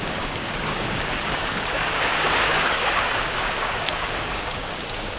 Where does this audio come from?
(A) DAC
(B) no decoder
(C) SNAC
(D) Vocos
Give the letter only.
A